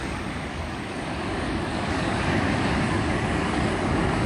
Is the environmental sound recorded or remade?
remade